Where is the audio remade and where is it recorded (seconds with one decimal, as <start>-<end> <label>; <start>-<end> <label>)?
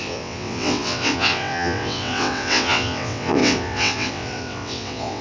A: 0.0-5.2 remade